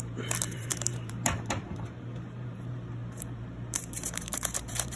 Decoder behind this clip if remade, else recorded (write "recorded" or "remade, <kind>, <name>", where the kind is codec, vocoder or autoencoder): remade, vocoder, BigVGAN v2